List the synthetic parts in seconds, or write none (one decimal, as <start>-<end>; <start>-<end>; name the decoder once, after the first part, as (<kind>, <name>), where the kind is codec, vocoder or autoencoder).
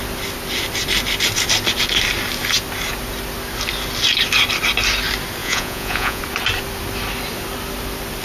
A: 5.4-6.2 (vocoder, Vocos)